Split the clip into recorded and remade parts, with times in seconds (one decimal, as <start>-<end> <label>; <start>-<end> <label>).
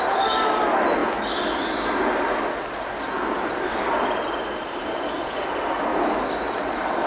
0.0-7.1 recorded